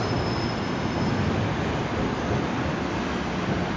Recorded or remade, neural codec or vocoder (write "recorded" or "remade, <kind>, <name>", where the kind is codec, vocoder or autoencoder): recorded